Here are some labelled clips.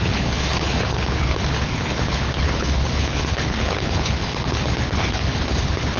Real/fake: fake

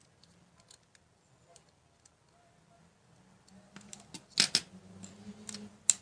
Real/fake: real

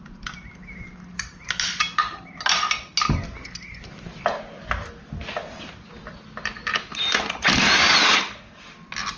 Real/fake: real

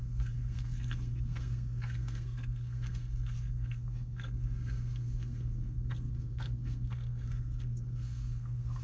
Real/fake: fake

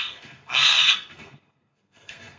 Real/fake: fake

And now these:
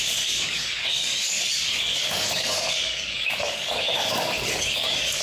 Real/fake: fake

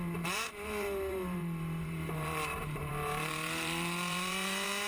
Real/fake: fake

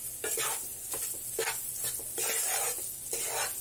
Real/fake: real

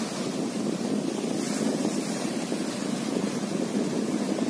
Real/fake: real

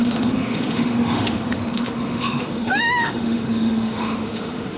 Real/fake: fake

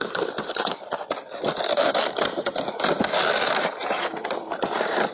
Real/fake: real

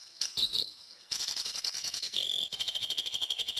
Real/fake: fake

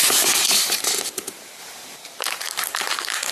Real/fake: fake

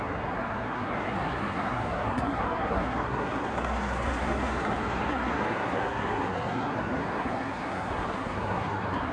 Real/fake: fake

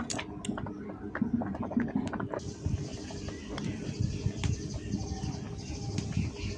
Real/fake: real